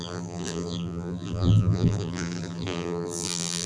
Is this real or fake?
fake